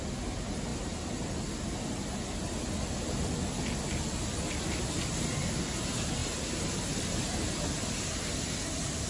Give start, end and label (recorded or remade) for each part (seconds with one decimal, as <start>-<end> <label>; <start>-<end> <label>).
0.0-9.1 recorded